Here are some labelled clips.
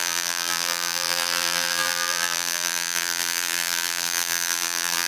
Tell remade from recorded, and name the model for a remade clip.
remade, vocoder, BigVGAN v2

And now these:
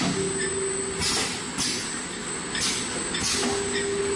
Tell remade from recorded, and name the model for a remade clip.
recorded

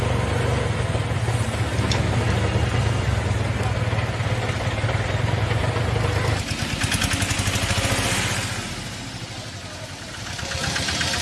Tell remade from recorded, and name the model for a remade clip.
recorded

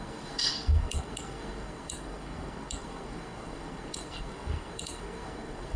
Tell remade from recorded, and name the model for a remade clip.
remade, codec, SNAC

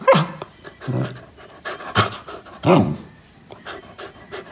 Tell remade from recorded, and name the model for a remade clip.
remade, vocoder, BigVGAN v2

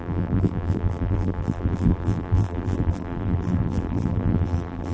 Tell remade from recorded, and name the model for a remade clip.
remade, vocoder, BigVGAN v2